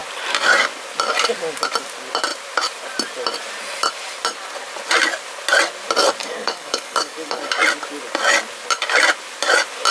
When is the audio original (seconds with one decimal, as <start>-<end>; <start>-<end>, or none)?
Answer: 0.0-6.2; 7.4-9.9

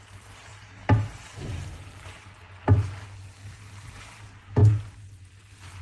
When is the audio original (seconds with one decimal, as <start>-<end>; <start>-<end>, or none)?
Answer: 0.5-4.0; 4.6-5.8